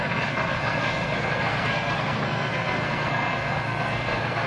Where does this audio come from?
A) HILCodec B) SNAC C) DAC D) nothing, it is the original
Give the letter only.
B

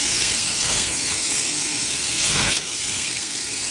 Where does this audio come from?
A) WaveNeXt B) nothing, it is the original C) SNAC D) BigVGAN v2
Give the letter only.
C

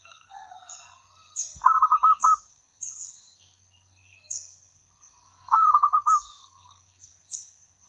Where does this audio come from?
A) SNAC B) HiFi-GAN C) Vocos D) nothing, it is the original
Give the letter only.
A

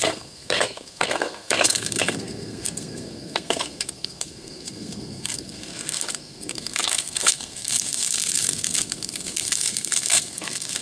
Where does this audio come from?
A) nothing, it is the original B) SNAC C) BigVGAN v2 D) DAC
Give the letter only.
B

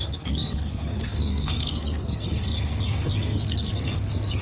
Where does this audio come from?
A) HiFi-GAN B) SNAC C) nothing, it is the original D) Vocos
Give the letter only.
B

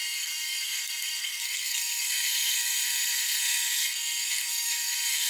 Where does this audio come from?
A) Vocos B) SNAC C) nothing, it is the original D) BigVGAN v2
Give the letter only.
B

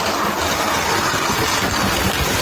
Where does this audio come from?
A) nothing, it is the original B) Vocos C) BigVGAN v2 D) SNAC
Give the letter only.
A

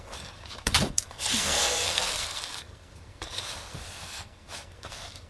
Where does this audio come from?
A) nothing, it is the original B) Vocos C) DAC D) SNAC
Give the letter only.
D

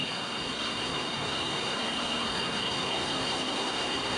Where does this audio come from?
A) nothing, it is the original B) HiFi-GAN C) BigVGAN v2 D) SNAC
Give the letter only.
D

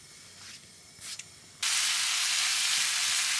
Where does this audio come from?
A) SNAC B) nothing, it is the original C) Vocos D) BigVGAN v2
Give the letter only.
B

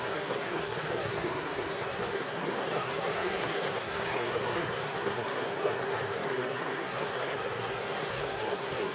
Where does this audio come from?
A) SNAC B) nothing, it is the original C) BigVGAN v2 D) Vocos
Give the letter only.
A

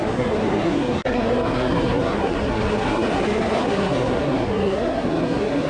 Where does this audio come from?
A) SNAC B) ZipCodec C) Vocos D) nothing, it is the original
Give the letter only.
A